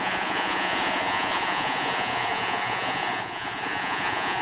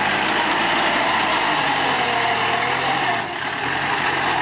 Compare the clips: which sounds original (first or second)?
second